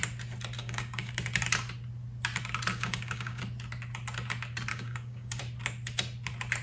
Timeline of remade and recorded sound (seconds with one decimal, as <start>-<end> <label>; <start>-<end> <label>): 0.0-0.6 recorded; 0.6-1.1 remade; 1.1-2.7 recorded; 2.7-3.4 remade; 3.4-4.7 recorded; 4.7-5.4 remade; 5.4-6.6 recorded